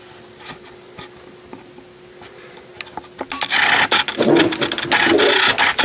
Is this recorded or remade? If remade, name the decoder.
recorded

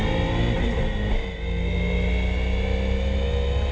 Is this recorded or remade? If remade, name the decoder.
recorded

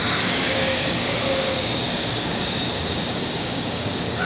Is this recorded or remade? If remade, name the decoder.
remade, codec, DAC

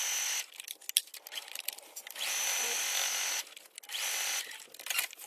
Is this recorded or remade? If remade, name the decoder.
recorded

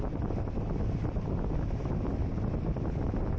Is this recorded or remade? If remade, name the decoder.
recorded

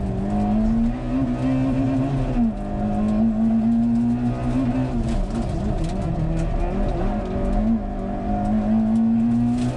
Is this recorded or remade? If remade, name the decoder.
recorded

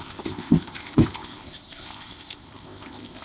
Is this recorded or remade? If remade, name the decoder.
remade, codec, ZipCodec